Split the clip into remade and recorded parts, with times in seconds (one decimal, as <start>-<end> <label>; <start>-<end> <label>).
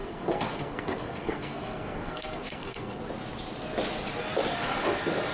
0.0-3.0 remade; 3.0-5.3 recorded